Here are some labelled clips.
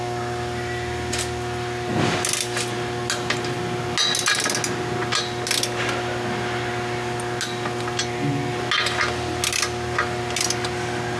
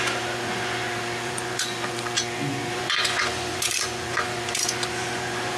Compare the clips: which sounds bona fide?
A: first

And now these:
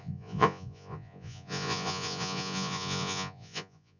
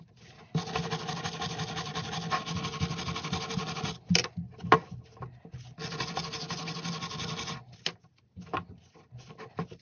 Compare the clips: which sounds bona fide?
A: second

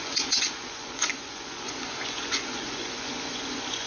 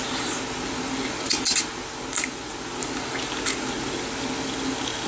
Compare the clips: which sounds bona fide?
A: second